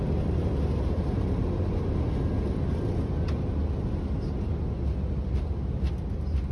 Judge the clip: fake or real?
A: real